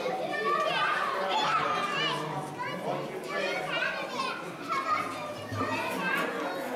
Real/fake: real